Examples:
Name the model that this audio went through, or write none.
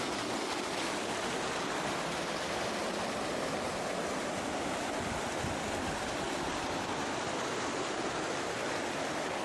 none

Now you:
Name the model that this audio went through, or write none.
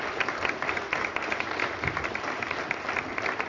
vocoder, BigVGAN v2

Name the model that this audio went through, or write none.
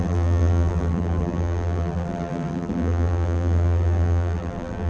vocoder, BigVGAN v2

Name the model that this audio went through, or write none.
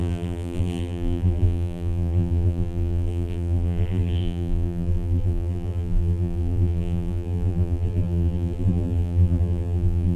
vocoder, BigVGAN v2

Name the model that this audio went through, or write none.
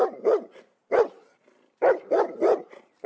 vocoder, BigVGAN v2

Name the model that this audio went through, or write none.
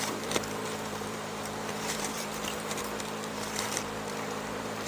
vocoder, BigVGAN v2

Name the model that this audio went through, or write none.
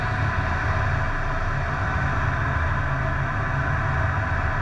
none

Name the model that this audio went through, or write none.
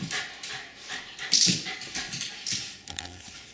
vocoder, BigVGAN v2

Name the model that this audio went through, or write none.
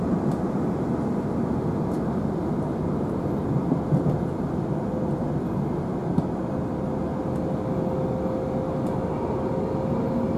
none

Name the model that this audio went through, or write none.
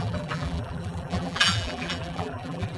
vocoder, BigVGAN v2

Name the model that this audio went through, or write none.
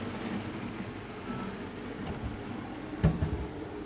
none